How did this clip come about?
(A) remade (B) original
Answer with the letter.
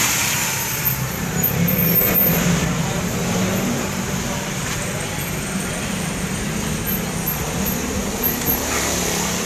A